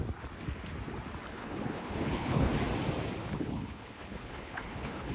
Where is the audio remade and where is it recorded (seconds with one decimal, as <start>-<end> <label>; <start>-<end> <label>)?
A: 0.0-1.3 recorded; 1.3-2.5 remade; 2.5-3.2 recorded; 3.2-5.1 remade